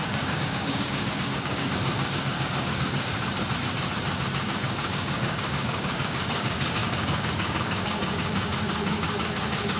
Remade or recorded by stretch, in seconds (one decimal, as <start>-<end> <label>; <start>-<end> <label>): 0.0-3.1 remade; 3.1-4.4 recorded; 4.4-9.8 remade